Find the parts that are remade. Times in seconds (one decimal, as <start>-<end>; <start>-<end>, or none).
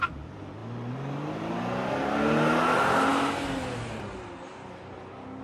none